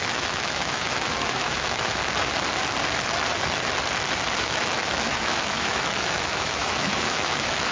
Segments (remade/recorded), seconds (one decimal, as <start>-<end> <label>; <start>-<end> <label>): 0.0-2.0 remade; 2.0-4.4 recorded; 4.4-7.7 remade